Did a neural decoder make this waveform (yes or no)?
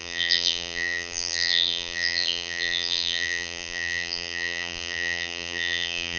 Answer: yes